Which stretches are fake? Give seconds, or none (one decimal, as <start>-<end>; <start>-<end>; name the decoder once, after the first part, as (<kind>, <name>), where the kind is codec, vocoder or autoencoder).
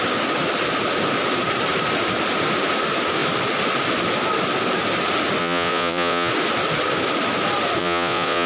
5.4-6.3 (vocoder, Vocos); 7.8-8.5